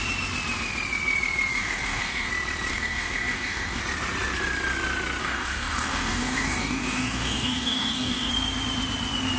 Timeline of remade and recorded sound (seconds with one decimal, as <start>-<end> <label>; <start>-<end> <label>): 0.0-1.5 recorded; 1.5-2.3 remade; 2.3-2.7 recorded; 2.7-3.8 remade; 3.8-5.2 recorded; 5.2-8.3 remade; 8.3-9.4 recorded